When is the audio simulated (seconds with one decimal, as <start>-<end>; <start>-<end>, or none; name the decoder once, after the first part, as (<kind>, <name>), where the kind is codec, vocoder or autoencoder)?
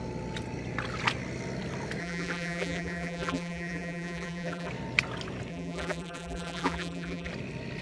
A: 2.0-4.7 (vocoder, BigVGAN v2); 5.5-7.3